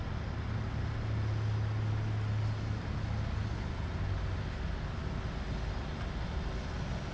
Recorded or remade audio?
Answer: recorded